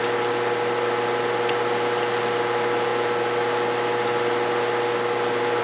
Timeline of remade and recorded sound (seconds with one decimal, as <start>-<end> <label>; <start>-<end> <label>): 0.0-5.6 recorded